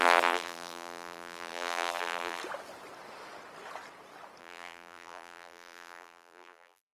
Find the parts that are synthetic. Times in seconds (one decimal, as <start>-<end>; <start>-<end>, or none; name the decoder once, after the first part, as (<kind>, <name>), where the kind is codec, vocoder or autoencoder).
0.0-2.4 (vocoder, BigVGAN v2); 4.4-6.9